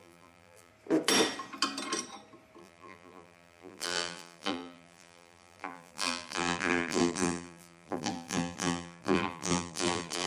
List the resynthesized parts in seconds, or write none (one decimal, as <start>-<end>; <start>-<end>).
0.0-0.7; 2.6-10.3